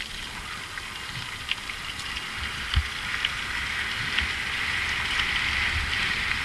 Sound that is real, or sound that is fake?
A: real